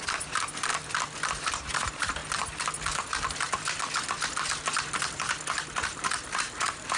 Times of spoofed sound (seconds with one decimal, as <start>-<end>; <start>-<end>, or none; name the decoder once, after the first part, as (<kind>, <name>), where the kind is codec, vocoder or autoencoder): 0.0-0.7 (vocoder, BigVGAN v2); 1.4-2.2; 5.0-7.0